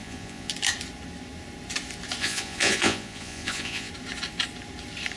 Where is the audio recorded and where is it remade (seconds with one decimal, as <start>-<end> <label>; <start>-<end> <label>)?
0.0-0.5 remade; 0.5-2.2 recorded; 2.2-3.9 remade; 3.9-5.2 recorded

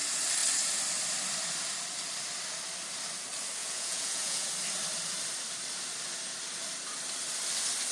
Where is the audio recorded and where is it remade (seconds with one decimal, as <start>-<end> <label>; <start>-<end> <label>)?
0.0-3.6 recorded; 3.6-4.5 remade; 4.5-7.9 recorded

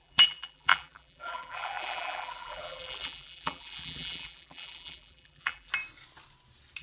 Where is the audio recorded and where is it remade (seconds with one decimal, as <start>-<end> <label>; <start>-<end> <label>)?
0.0-5.7 remade; 5.7-6.8 recorded

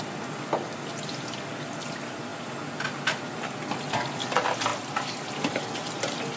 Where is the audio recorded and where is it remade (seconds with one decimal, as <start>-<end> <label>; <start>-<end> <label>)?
0.0-6.4 recorded

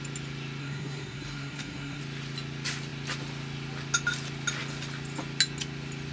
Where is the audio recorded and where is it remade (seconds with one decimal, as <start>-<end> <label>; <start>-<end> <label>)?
0.0-0.6 recorded; 0.6-2.0 remade; 2.0-6.1 recorded

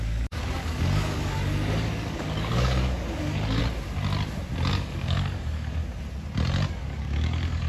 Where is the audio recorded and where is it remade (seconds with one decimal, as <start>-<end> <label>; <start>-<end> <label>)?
0.0-3.6 remade; 3.6-4.7 recorded; 4.7-5.8 remade; 5.8-6.7 recorded; 6.7-7.7 remade